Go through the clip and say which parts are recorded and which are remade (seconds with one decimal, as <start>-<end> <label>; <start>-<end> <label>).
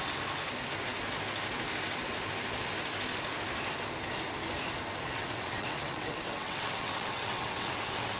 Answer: 0.0-5.1 recorded; 5.1-8.2 remade